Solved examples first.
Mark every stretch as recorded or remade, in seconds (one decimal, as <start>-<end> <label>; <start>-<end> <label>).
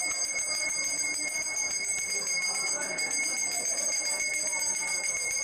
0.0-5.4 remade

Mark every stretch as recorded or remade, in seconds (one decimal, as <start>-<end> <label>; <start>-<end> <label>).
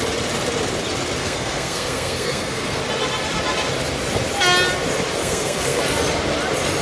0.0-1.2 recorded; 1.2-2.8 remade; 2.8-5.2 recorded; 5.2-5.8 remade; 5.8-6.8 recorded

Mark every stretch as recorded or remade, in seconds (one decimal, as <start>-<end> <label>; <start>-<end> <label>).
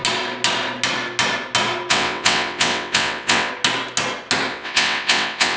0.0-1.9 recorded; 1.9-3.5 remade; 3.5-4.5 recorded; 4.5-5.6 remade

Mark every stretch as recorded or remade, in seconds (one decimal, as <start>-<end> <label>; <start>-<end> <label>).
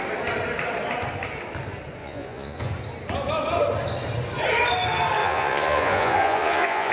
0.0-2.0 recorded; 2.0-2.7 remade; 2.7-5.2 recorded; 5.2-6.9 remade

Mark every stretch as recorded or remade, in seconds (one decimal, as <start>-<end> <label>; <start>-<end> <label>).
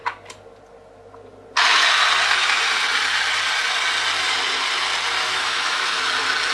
0.0-5.2 recorded; 5.2-6.0 remade; 6.0-6.5 recorded